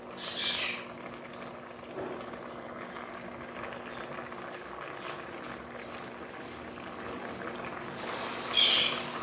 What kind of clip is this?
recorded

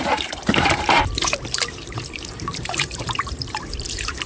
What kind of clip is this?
remade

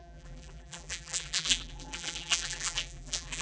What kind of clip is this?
remade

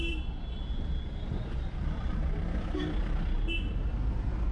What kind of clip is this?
recorded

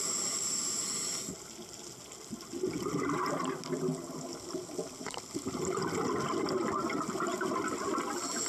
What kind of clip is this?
recorded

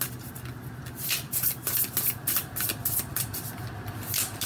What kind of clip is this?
recorded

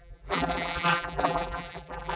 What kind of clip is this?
remade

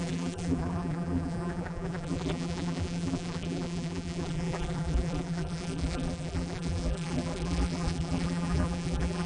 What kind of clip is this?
remade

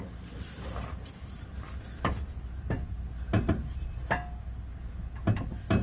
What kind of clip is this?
recorded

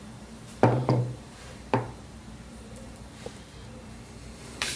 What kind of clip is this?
remade